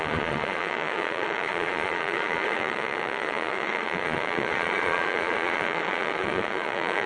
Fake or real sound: fake